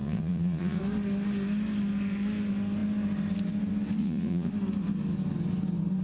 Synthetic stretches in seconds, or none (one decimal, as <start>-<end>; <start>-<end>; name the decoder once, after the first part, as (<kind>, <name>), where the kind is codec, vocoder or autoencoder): 0.0-0.8 (vocoder, Vocos); 4.0-4.5